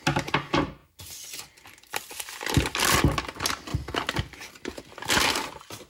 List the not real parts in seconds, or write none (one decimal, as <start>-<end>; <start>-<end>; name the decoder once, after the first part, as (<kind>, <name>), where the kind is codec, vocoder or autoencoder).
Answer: none